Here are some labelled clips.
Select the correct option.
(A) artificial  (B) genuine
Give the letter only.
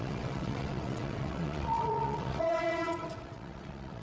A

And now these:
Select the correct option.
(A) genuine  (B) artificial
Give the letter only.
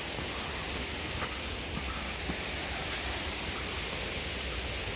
A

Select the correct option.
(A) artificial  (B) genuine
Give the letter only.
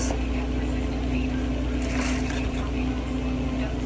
B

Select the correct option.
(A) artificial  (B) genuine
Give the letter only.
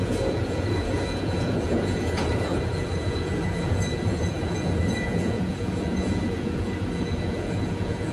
A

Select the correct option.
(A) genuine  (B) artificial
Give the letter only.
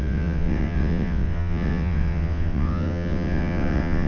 B